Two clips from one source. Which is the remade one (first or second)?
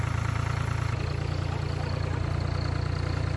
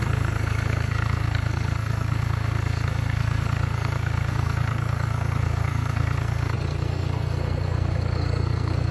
second